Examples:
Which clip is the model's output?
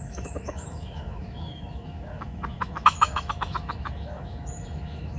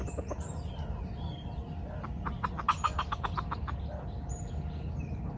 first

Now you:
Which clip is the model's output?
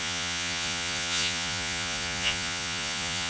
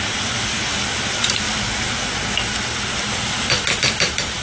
first